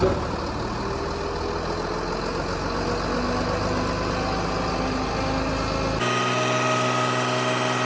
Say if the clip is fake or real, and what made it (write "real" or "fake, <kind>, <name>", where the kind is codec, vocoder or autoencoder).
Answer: real